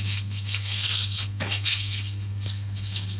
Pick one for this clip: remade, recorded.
remade